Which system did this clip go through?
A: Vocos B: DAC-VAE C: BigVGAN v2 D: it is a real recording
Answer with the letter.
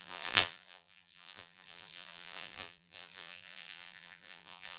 C